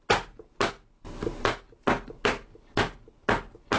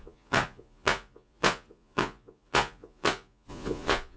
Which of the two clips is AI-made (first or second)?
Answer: second